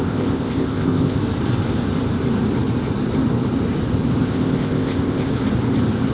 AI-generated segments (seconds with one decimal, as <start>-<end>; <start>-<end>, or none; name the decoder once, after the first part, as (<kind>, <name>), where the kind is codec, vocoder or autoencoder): 0.0-1.2 (codec, ZipCodec); 4.2-5.3